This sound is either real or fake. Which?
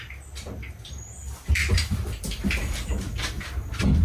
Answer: real